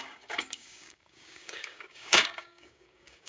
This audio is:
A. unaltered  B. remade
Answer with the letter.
B